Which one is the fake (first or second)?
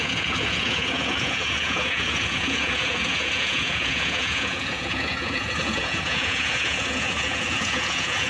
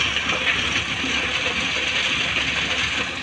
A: first